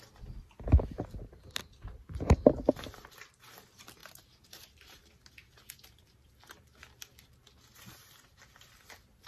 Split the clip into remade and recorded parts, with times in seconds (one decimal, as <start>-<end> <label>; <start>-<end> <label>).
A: 0.0-4.0 recorded; 4.0-6.3 remade; 6.3-9.3 recorded